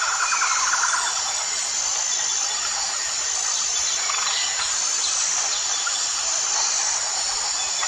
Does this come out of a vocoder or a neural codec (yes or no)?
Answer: no